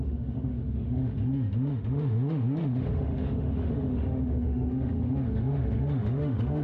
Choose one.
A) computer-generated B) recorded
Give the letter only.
A